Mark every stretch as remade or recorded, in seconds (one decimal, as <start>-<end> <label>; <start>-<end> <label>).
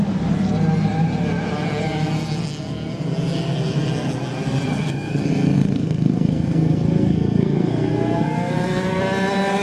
0.0-4.7 recorded; 4.7-9.0 remade; 9.0-9.6 recorded